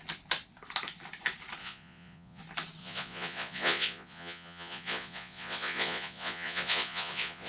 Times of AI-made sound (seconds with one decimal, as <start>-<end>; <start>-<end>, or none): 1.6-2.4; 2.8-7.5